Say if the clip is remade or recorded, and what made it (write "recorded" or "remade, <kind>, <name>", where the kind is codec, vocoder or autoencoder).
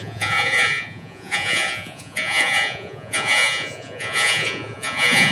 remade, vocoder, Vocos